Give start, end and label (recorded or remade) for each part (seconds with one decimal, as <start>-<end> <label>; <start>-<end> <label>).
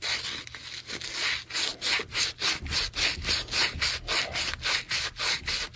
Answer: 0.0-5.8 recorded